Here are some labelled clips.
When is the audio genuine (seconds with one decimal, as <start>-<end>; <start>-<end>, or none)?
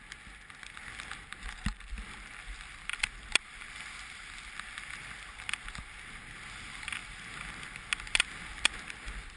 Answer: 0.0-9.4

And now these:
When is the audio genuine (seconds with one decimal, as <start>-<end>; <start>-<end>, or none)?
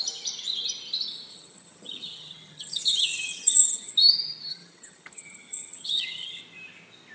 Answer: 0.0-1.3; 3.9-4.5; 6.4-7.1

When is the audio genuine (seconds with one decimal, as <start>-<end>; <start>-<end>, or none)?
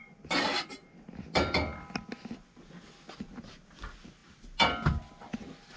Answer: 0.0-5.8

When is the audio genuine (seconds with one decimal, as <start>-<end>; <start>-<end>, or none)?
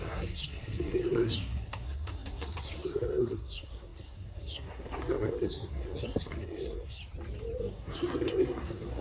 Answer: 7.0-7.6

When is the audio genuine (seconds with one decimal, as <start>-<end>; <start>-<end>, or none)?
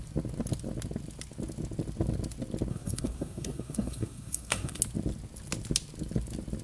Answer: 0.0-2.7; 4.8-6.6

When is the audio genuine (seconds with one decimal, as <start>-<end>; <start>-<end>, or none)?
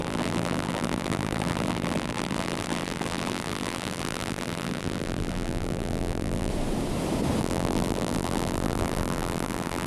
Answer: 6.5-7.4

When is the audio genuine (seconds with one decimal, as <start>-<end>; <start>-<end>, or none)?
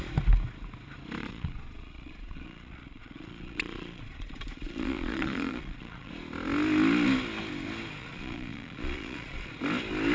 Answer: 0.0-1.2; 6.1-8.0; 9.5-10.1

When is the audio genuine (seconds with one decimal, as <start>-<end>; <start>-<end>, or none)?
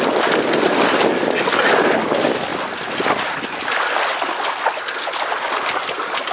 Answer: 0.0-6.3